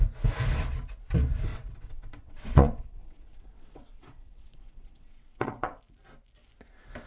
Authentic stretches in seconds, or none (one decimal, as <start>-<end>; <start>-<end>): 0.0-1.5; 5.8-7.1